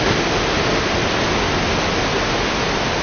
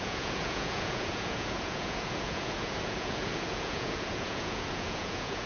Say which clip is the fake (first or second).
second